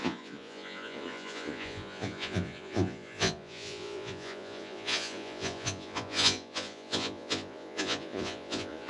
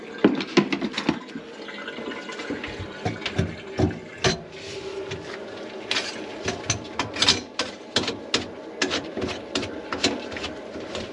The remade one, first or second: first